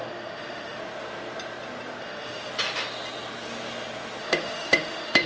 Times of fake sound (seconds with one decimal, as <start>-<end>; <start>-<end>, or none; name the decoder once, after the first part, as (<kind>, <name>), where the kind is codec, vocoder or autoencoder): 0.0-0.8 (autoencoder, DAC-VAE); 2.0-2.5; 4.2-5.3